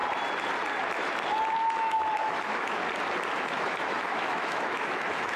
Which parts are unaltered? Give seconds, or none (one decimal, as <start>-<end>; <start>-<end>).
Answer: 0.0-1.8; 2.8-3.3